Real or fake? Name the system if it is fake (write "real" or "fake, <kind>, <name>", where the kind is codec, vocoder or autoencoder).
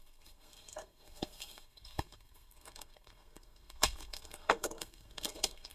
fake, codec, SNAC